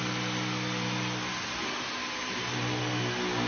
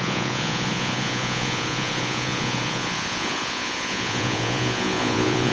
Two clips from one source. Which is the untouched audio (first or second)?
first